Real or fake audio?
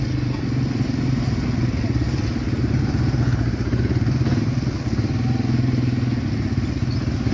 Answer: real